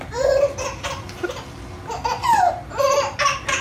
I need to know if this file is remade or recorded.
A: recorded